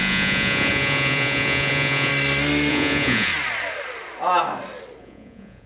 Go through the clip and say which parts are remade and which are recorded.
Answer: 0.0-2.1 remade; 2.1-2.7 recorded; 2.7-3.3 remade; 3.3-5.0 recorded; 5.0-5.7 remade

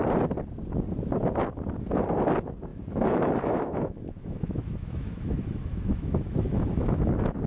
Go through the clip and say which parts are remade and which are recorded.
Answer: 0.0-2.7 recorded; 2.7-7.1 remade; 7.1-7.5 recorded

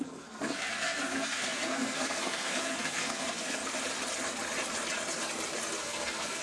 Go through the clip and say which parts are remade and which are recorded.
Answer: 0.0-3.6 remade; 3.6-5.8 recorded; 5.8-6.4 remade

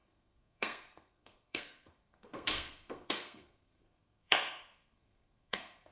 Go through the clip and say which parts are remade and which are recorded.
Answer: 0.0-5.9 remade

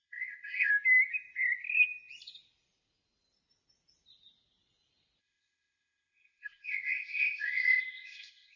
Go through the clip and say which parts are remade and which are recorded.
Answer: 0.0-0.7 remade; 0.7-5.2 recorded; 5.2-8.6 remade

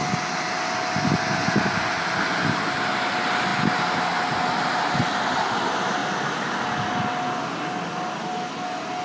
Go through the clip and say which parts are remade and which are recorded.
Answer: 0.0-9.0 recorded

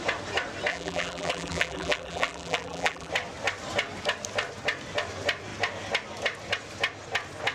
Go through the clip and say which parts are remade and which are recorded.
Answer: 0.0-0.7 recorded; 0.7-3.1 remade; 3.1-7.5 recorded